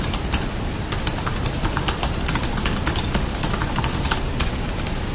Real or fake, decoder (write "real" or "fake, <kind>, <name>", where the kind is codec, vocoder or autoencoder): real